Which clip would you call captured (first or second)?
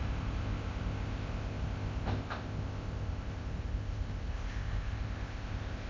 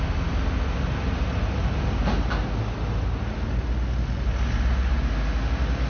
second